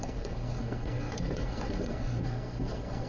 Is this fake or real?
fake